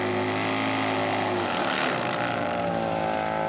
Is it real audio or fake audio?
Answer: real